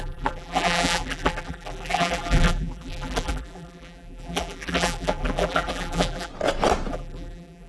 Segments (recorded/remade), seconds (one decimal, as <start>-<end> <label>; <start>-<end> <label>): 0.0-6.3 remade; 6.3-6.9 recorded; 6.9-7.7 remade